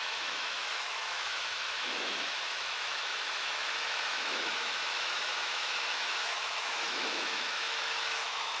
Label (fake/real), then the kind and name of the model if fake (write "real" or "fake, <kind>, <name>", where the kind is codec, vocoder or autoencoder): fake, autoencoder, DAC-VAE